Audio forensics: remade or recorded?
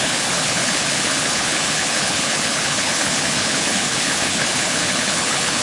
remade